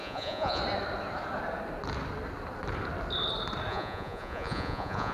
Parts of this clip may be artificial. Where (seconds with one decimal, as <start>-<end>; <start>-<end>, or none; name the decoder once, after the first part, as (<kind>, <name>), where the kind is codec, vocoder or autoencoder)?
0.0-0.6 (vocoder, Vocos); 3.7-5.1